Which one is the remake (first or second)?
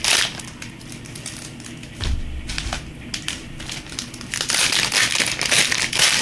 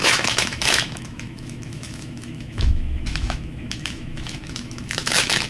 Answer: second